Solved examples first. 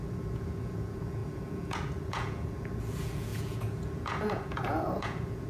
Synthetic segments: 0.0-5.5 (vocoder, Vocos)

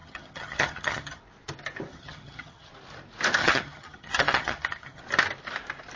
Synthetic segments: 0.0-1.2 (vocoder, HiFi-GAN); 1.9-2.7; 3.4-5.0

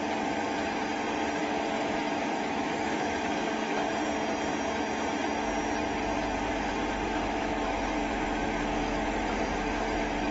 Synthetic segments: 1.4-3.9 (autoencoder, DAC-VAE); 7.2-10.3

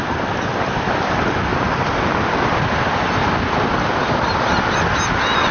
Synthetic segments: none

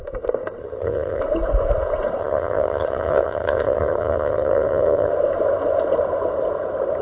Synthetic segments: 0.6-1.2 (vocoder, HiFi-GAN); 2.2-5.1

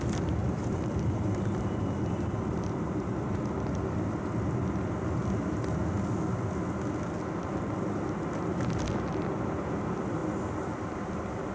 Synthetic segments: 0.4-3.4 (vocoder, BigVGAN v2)